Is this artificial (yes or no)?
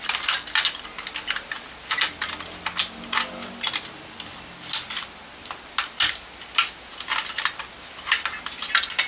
no